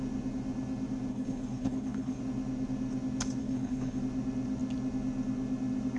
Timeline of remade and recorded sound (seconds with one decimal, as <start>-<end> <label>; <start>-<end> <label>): 0.0-1.1 recorded; 1.1-2.2 remade; 2.2-3.4 recorded; 3.4-4.0 remade; 4.0-6.0 recorded

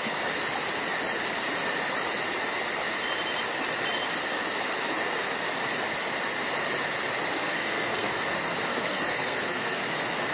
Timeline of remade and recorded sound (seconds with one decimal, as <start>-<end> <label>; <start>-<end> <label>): 0.0-7.4 recorded; 7.4-8.2 remade; 8.2-8.7 recorded; 8.7-9.8 remade; 9.8-10.3 recorded

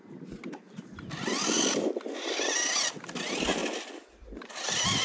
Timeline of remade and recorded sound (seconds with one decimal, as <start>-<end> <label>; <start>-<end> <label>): 0.0-5.0 recorded

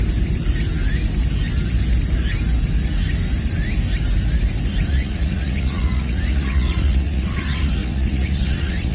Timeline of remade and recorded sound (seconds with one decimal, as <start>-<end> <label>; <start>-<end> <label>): 0.0-4.9 recorded; 4.9-8.9 remade

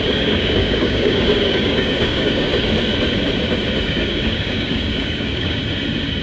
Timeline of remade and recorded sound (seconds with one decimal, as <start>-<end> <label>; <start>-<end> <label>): 0.0-2.5 remade; 2.5-3.8 recorded; 3.8-5.6 remade; 5.6-6.2 recorded

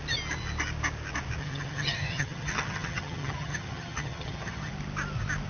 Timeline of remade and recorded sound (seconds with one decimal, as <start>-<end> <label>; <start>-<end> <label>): 0.0-1.4 recorded; 1.4-4.7 remade; 4.7-5.5 recorded